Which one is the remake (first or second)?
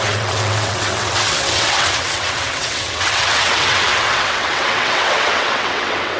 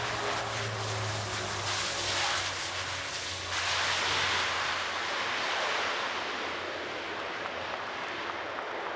first